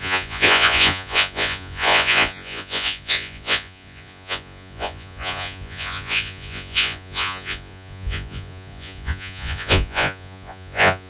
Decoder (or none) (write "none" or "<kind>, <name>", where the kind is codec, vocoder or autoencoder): vocoder, Vocos